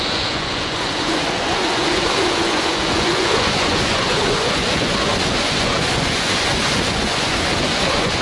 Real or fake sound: fake